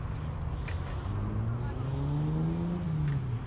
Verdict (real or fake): real